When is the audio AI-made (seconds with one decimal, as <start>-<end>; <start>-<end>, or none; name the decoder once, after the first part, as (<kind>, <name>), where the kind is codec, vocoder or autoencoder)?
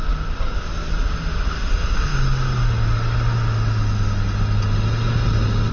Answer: none